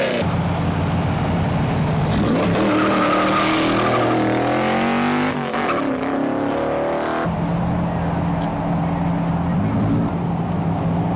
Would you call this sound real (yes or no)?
yes